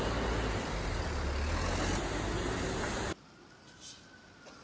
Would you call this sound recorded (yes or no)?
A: yes